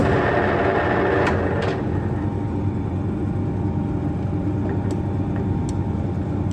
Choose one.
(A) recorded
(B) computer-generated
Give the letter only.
A